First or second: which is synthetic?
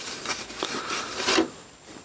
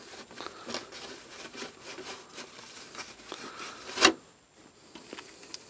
first